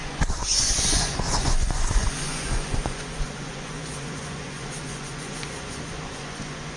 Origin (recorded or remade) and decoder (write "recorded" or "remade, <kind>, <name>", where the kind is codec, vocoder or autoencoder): remade, vocoder, Vocos